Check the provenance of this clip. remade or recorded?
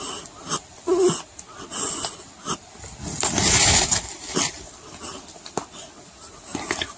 recorded